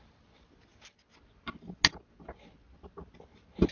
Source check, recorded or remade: recorded